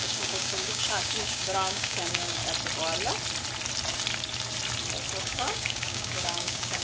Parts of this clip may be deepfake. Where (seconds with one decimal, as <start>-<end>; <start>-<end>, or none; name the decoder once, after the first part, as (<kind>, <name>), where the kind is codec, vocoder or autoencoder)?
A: 0.0-2.4 (codec, DAC); 5.2-6.8